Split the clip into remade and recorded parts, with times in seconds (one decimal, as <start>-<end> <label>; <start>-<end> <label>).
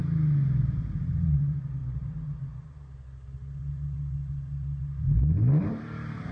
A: 0.0-0.6 recorded; 0.6-1.8 remade; 1.8-5.6 recorded; 5.6-6.3 remade